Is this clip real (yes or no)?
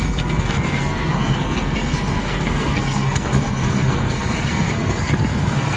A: no